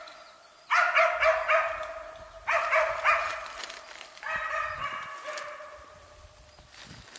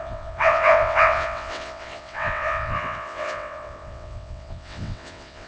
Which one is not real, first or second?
second